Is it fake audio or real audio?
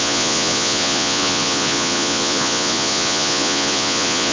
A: fake